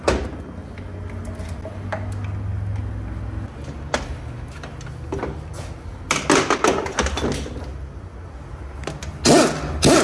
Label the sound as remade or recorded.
recorded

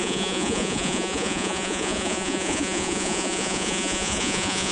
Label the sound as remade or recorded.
remade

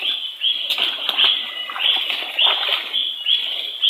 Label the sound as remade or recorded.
recorded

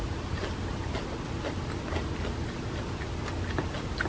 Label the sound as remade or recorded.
recorded